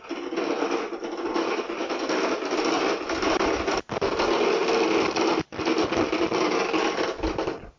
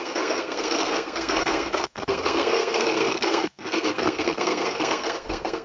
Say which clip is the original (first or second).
first